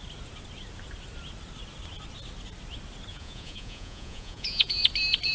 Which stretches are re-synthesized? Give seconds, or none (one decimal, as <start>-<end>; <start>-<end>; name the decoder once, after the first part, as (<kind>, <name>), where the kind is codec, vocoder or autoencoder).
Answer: 3.1-4.8 (vocoder, Vocos)